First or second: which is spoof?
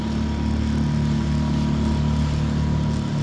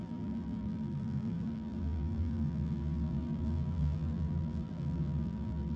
second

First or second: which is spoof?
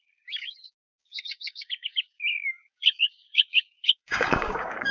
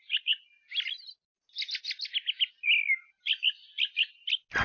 first